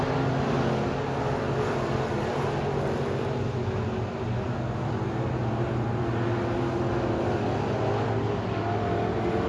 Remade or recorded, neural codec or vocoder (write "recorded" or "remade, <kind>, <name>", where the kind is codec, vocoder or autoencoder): recorded